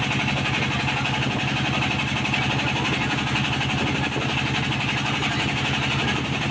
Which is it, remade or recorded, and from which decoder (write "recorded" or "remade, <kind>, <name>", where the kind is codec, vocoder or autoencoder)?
recorded